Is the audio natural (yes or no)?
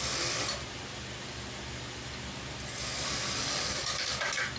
yes